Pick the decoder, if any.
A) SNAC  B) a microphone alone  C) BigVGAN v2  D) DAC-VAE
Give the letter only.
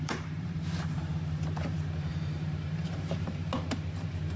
C